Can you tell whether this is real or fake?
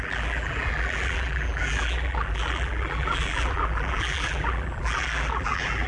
fake